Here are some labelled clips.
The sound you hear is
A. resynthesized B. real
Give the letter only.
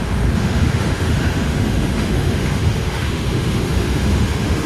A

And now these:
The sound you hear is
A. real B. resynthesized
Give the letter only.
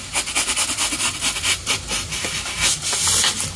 A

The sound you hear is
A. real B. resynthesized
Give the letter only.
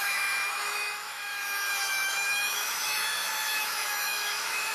B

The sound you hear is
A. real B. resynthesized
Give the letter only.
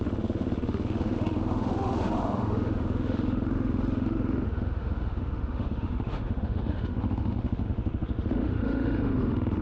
B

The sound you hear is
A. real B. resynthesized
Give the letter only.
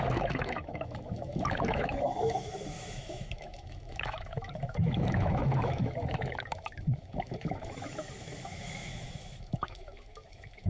B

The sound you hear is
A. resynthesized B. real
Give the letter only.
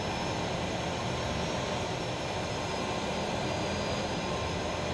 B